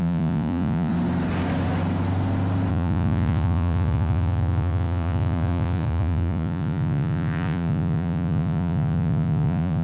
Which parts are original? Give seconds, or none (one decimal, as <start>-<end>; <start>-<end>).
0.9-2.7